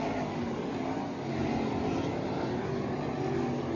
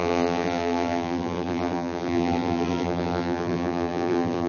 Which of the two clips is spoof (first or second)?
second